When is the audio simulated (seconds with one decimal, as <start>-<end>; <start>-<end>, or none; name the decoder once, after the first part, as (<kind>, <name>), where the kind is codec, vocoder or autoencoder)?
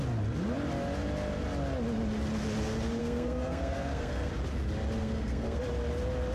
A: 3.0-4.3 (codec, SNAC); 5.0-5.6